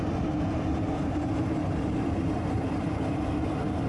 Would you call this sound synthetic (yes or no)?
yes